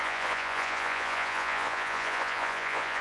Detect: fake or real fake